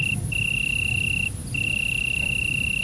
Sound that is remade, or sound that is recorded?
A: recorded